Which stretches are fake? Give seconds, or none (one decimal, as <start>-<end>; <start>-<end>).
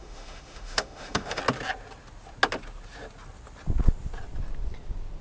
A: 0.0-1.4